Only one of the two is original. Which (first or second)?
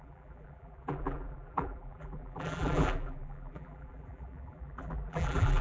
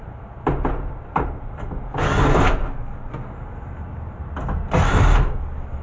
second